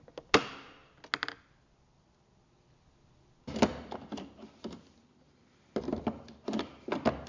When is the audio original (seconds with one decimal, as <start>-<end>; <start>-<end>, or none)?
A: 0.0-7.3